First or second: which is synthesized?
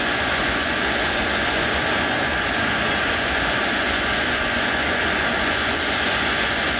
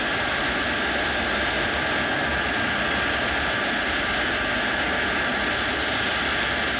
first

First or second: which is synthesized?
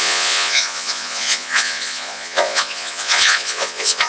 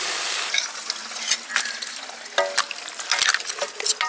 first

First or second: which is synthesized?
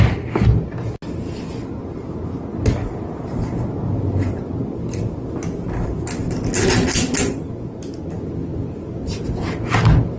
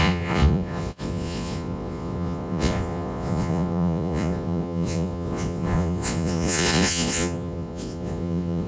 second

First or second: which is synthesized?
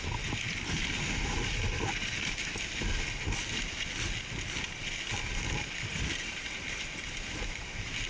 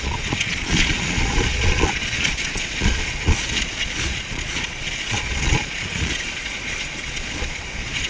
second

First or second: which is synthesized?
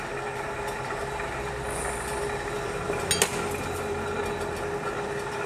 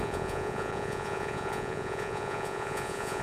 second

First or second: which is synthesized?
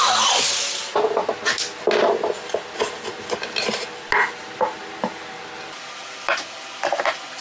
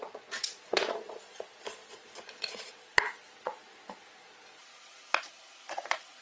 second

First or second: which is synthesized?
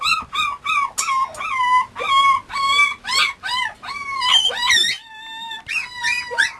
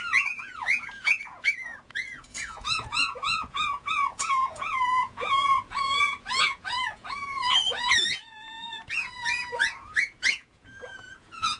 second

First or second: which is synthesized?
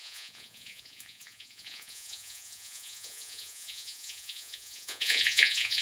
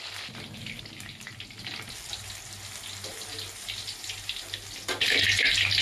first